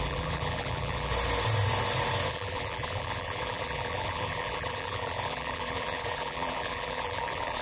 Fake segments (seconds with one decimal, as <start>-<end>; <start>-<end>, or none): 0.0-1.1; 2.3-7.6